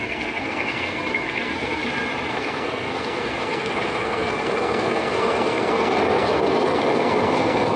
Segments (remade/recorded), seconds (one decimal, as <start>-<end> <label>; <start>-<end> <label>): 0.0-1.8 remade; 1.8-2.3 recorded; 2.3-7.8 remade